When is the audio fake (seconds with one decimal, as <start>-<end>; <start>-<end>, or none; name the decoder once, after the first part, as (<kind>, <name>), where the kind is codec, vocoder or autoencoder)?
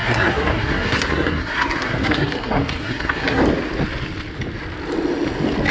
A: 0.0-3.4 (codec, SNAC)